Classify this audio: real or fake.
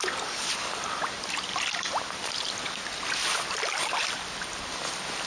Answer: real